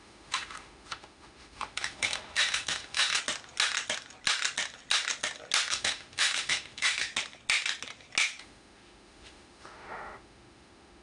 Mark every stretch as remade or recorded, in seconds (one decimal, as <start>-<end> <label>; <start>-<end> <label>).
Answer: 0.0-3.2 remade; 3.2-5.7 recorded; 5.7-7.1 remade; 7.1-8.4 recorded; 8.4-11.0 remade